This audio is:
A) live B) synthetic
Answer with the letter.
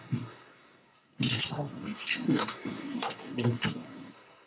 B